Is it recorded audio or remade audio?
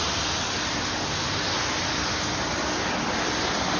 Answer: recorded